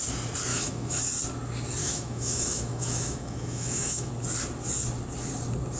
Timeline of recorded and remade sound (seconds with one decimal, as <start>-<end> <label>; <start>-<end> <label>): 0.0-0.5 recorded; 0.5-1.0 remade; 1.0-1.8 recorded; 1.8-4.1 remade; 4.1-5.8 recorded

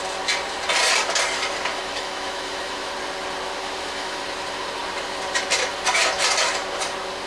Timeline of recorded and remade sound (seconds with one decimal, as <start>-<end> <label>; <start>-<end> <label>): 0.0-1.7 recorded; 1.7-2.9 remade; 2.9-3.6 recorded; 3.6-4.2 remade; 4.2-7.3 recorded

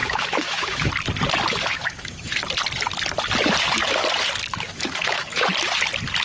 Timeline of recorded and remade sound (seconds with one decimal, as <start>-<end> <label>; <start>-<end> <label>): 0.0-0.9 remade; 0.9-1.7 recorded; 1.7-2.4 remade; 2.4-4.5 recorded; 4.5-5.4 remade; 5.4-6.2 recorded

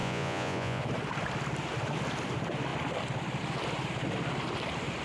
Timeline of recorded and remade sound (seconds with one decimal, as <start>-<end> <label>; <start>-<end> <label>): 0.0-0.8 remade; 0.8-5.0 recorded

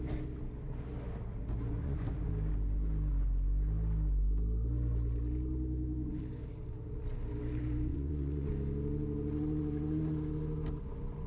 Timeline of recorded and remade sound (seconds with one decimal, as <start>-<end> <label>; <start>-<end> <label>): 0.0-1.8 recorded; 1.8-2.3 remade; 2.3-7.9 recorded; 7.9-8.5 remade; 8.5-11.3 recorded

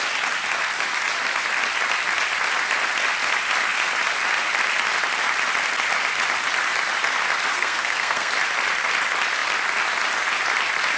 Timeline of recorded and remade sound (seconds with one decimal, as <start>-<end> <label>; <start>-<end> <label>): 0.0-7.5 recorded; 7.5-8.3 remade; 8.3-11.0 recorded

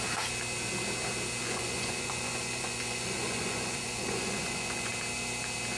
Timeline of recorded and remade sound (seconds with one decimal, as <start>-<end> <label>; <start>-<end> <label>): 0.0-1.4 recorded; 1.4-4.9 remade; 4.9-5.8 recorded